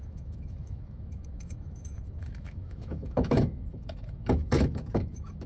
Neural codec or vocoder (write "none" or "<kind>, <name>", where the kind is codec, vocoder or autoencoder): autoencoder, DAC-VAE